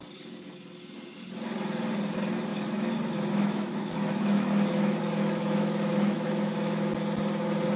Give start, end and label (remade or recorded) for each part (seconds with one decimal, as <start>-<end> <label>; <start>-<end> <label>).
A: 0.0-2.5 recorded; 2.5-6.9 remade; 6.9-7.8 recorded